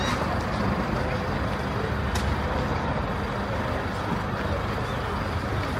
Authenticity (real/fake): real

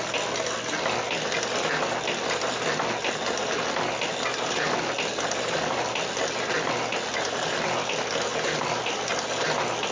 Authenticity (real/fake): real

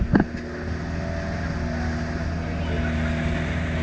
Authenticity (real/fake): real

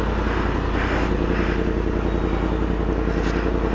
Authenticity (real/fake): real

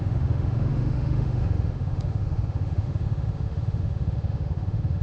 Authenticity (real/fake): fake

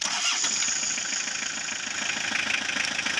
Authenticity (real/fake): real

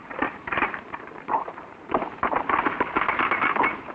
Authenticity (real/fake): fake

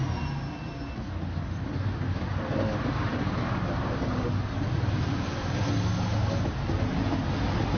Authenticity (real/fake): real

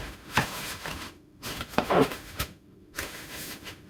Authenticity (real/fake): fake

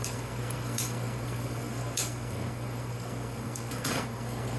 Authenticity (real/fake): fake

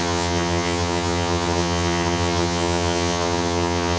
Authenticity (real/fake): fake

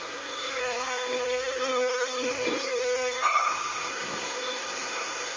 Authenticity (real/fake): fake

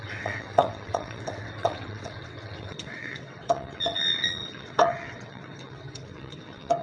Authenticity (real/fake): fake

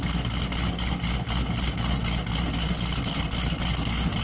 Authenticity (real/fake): real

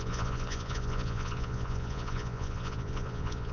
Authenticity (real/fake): fake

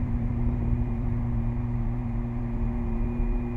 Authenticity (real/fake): fake